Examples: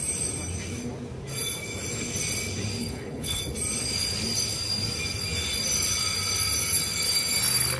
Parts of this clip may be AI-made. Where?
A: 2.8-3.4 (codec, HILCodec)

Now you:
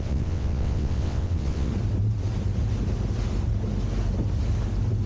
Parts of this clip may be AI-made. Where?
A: 0.0-1.7 (vocoder, WaveNeXt)